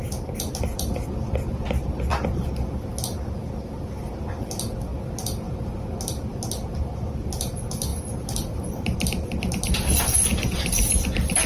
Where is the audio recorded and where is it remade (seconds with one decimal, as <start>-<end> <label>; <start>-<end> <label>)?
0.0-11.5 recorded